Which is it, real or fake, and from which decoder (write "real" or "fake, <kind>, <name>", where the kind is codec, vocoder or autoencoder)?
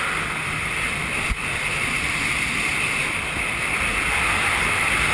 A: real